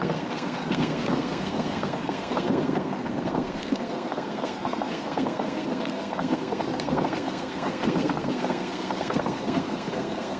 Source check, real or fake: fake